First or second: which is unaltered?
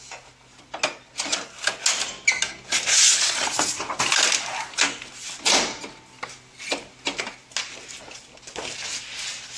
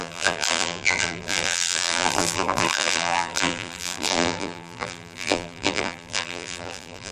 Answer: first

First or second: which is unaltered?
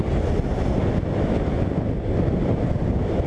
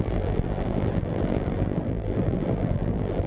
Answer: first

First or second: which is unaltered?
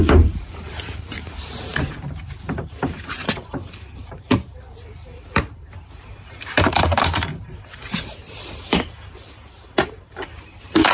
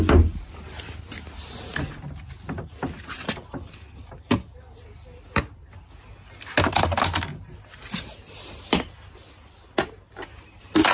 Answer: second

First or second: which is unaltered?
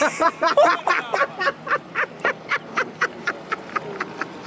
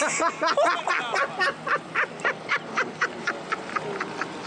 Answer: second